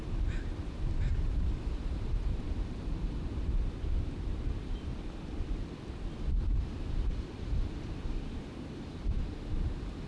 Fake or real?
fake